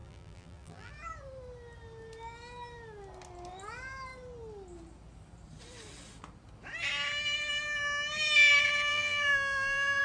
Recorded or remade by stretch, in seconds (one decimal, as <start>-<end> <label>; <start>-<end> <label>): 0.0-0.9 remade; 0.9-8.9 recorded; 8.9-10.0 remade